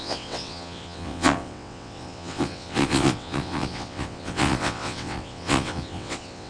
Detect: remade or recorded remade